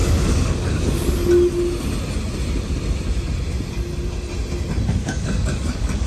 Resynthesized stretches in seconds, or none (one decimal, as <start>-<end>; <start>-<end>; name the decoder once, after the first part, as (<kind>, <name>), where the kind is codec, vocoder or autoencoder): 0.0-1.2 (codec, DAC); 4.9-6.1